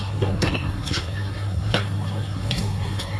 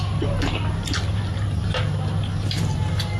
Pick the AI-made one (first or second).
first